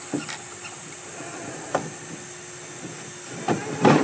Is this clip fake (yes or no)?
no